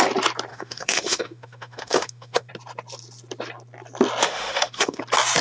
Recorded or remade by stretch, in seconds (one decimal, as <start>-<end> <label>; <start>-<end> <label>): 0.0-0.5 recorded; 0.5-2.5 remade; 2.5-4.2 recorded; 4.2-5.0 remade; 5.0-5.4 recorded